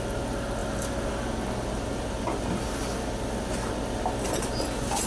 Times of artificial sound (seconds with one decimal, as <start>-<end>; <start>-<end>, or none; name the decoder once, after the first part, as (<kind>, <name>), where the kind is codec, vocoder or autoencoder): none